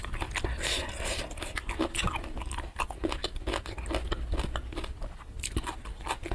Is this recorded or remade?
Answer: recorded